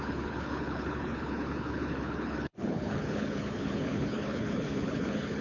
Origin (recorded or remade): remade